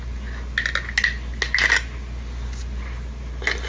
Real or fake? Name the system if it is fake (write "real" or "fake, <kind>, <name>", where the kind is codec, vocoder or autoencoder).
real